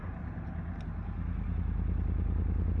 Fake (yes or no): no